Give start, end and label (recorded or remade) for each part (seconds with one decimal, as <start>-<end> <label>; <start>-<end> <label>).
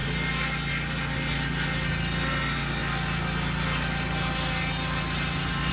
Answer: 0.0-5.7 recorded